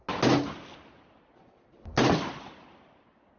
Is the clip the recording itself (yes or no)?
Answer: yes